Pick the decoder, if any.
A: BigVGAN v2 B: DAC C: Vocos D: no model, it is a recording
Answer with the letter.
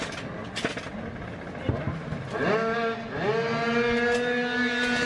D